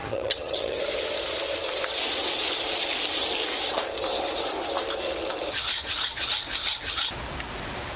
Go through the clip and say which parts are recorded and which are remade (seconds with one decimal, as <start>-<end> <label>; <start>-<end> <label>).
0.0-0.8 remade; 0.8-8.0 recorded